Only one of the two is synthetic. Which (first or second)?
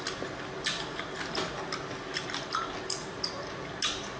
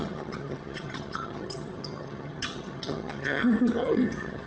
second